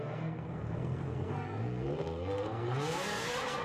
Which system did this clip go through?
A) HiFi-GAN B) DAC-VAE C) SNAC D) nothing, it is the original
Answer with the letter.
C